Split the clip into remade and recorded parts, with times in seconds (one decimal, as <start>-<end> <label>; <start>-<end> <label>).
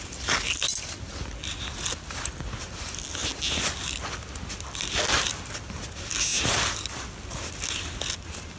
0.0-8.6 recorded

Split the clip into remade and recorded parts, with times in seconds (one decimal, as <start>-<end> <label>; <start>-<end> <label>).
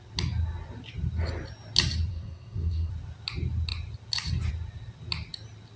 0.0-2.1 recorded; 2.1-2.9 remade; 2.9-5.8 recorded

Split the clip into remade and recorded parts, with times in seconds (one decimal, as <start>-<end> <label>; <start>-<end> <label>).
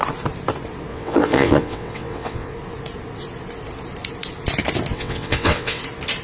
0.0-0.9 recorded; 0.9-2.5 remade; 2.5-4.9 recorded; 4.9-5.8 remade; 5.8-6.2 recorded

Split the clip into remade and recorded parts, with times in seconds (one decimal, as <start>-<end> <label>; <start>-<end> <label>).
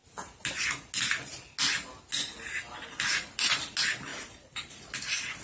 0.0-4.1 recorded; 4.1-4.8 remade; 4.8-5.4 recorded